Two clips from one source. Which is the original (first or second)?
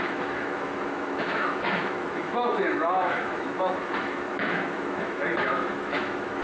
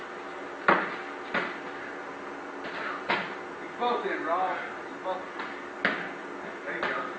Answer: second